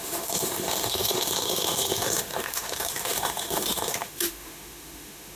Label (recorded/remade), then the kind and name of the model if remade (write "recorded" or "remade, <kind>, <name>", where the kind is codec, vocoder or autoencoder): remade, autoencoder, DAC-VAE